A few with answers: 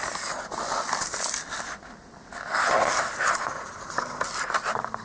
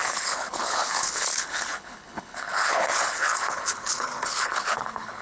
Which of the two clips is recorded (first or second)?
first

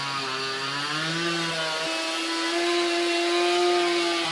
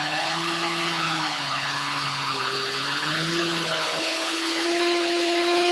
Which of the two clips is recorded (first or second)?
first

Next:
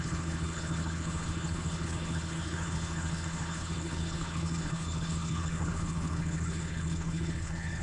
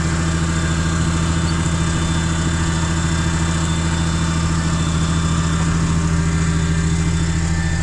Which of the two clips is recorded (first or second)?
second